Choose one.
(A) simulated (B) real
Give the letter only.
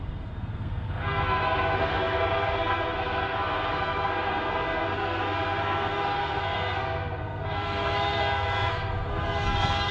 A